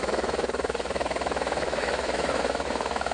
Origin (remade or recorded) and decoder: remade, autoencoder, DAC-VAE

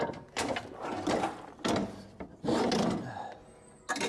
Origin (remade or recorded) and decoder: recorded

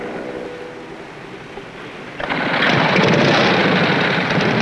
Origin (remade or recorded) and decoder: recorded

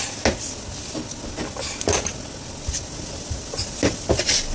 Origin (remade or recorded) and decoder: recorded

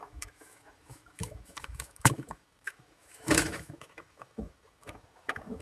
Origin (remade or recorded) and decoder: remade, autoencoder, DAC-VAE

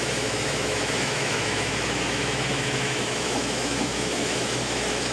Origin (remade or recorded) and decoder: remade, autoencoder, DAC-VAE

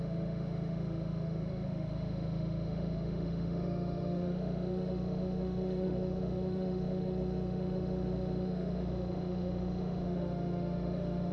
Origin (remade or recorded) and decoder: remade, autoencoder, DAC-VAE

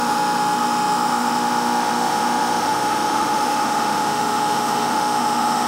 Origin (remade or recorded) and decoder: remade, autoencoder, DAC-VAE